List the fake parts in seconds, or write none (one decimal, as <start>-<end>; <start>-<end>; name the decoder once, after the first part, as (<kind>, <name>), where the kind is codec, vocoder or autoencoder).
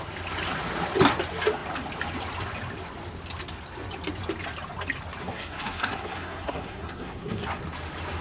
5.2-7.6 (codec, SNAC)